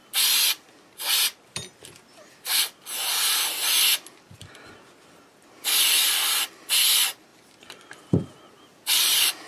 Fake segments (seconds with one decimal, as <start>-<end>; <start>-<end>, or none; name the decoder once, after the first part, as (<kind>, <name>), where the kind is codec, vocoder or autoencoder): 7.3-9.5 (vocoder, BigVGAN v2)

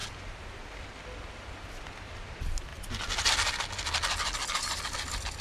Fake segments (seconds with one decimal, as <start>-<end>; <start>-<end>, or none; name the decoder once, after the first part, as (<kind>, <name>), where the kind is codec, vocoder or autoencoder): none

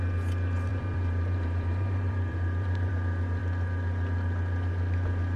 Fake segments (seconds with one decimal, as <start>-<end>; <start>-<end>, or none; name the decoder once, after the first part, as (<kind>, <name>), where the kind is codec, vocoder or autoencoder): 0.7-2.9 (vocoder, BigVGAN v2)

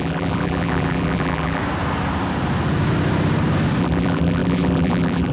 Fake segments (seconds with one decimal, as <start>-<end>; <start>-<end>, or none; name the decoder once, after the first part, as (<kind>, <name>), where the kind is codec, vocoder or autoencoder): 0.0-1.6 (vocoder, BigVGAN v2); 3.8-5.3

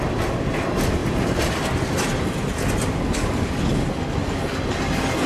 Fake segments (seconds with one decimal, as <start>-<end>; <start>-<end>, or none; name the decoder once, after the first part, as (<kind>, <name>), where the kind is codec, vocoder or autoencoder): 1.0-2.9 (vocoder, BigVGAN v2)

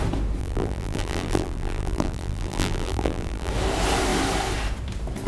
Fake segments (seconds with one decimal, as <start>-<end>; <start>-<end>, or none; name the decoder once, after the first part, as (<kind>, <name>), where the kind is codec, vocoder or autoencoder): 0.4-3.5 (vocoder, BigVGAN v2)